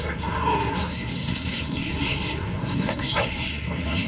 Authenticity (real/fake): fake